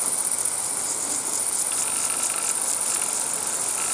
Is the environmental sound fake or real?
fake